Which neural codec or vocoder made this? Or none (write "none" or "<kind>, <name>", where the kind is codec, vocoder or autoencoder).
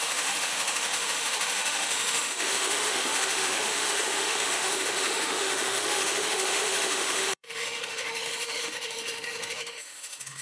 autoencoder, DAC-VAE